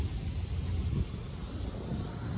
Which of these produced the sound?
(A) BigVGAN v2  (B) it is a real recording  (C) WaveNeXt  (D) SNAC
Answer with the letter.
B